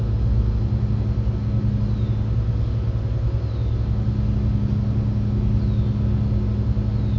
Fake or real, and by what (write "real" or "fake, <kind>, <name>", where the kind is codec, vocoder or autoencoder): real